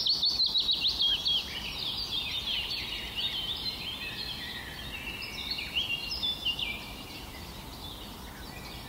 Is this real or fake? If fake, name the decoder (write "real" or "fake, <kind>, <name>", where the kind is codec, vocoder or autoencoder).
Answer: real